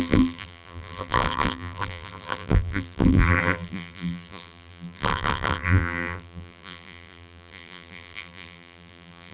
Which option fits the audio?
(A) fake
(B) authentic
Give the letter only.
A